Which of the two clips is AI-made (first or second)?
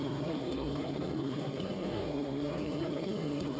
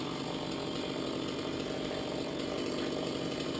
first